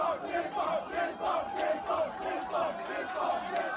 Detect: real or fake real